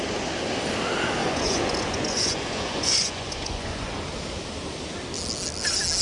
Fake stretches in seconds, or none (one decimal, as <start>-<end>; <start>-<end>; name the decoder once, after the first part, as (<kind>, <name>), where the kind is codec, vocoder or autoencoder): 1.2-3.9 (vocoder, Vocos)